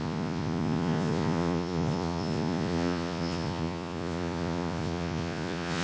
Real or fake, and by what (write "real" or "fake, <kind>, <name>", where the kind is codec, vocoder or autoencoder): fake, vocoder, Vocos